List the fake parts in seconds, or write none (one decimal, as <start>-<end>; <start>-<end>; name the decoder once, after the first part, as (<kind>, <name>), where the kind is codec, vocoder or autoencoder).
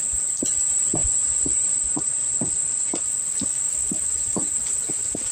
none